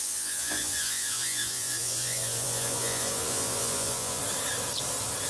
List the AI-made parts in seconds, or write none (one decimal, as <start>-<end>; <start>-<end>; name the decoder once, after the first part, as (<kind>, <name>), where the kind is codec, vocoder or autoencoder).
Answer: 0.0-4.2 (vocoder, Vocos)